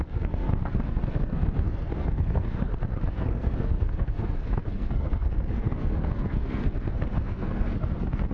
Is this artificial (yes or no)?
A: yes